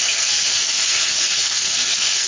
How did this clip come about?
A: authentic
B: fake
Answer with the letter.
B